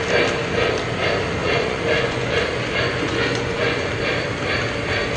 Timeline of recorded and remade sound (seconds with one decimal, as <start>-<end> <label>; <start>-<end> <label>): 0.0-1.4 recorded; 1.4-3.9 remade; 3.9-5.2 recorded